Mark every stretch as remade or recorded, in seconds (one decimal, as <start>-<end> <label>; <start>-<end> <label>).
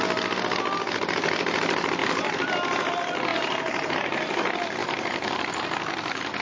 0.0-2.0 recorded; 2.0-2.9 remade; 2.9-3.3 recorded; 3.3-3.9 remade; 3.9-4.8 recorded; 4.8-5.5 remade; 5.5-6.4 recorded